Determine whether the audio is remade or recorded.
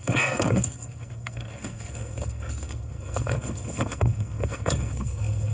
remade